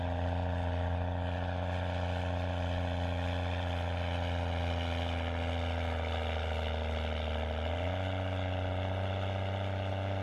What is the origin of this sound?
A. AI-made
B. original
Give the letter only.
B